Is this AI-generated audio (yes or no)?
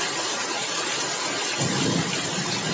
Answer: no